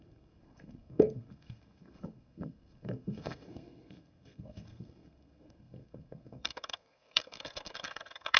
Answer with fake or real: fake